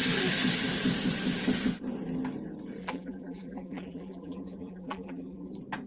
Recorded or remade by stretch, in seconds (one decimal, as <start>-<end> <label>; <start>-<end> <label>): 0.0-2.8 recorded; 2.8-5.5 remade; 5.5-5.9 recorded